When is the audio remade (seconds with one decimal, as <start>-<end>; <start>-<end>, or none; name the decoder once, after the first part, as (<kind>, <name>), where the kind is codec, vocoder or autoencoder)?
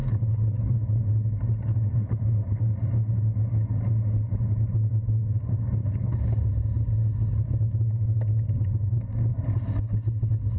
0.0-1.0 (codec, HILCodec); 1.9-2.6; 5.8-6.4